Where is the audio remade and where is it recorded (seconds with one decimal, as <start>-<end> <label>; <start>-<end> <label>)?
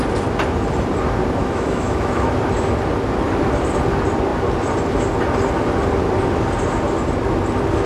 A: 0.0-1.4 recorded; 1.4-2.4 remade; 2.4-7.9 recorded